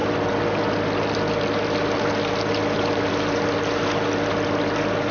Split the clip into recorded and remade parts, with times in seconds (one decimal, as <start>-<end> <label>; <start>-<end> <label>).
0.0-5.1 recorded